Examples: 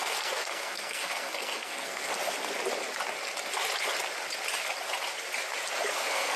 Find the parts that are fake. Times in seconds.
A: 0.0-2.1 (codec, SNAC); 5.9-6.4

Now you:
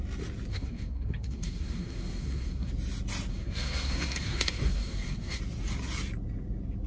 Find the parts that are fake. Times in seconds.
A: 0.5-2.7 (codec, SNAC); 3.3-5.4

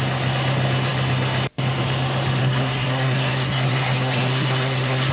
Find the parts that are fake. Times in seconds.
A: 2.4-5.1 (codec, SNAC)